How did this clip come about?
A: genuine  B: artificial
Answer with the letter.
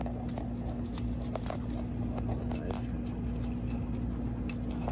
A